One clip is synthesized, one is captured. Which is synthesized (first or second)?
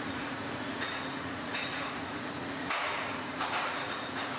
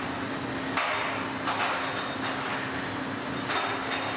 first